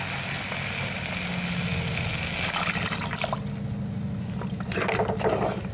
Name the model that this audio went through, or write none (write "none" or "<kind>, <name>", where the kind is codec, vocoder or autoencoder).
none